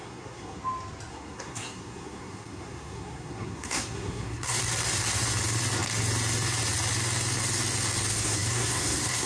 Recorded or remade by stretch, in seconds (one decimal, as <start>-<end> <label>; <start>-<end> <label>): 0.0-0.6 remade; 0.6-1.1 recorded; 1.1-4.6 remade; 4.6-8.1 recorded; 8.1-9.3 remade